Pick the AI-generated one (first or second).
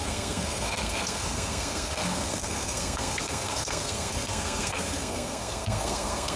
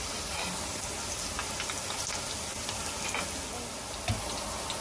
first